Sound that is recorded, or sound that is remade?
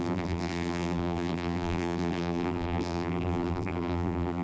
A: remade